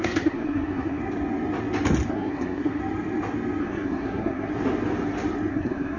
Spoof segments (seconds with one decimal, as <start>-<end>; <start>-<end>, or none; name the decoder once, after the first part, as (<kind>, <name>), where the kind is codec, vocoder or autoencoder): 0.0-1.0 (codec, SNAC); 2.1-2.8; 3.6-4.5; 5.5-6.0